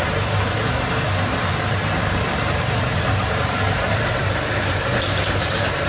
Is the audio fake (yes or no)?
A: yes